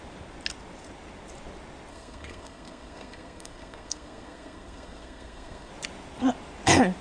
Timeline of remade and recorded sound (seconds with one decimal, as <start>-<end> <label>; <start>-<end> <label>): 0.0-1.9 recorded; 1.9-5.7 remade; 5.7-7.0 recorded